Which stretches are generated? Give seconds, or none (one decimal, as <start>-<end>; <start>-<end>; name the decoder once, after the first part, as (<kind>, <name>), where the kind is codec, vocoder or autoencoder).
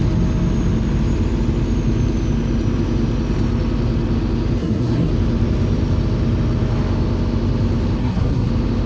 4.6-5.1 (codec, SNAC); 8.0-8.5